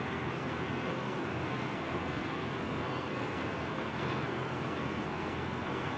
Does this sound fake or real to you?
fake